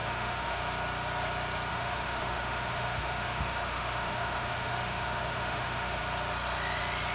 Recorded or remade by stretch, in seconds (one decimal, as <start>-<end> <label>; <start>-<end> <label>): 0.0-0.6 remade; 0.6-1.7 recorded; 1.7-6.0 remade; 6.0-7.1 recorded